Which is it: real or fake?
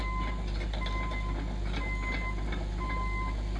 real